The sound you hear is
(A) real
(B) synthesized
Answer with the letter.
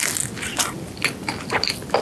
A